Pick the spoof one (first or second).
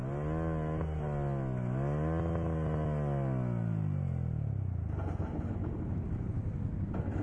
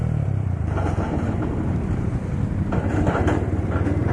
second